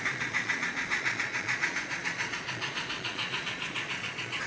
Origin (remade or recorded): remade